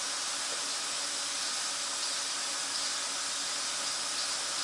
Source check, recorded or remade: recorded